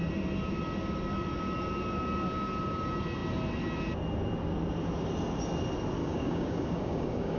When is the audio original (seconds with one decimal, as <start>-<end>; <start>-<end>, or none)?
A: 0.0-6.0